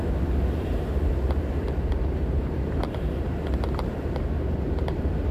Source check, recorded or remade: remade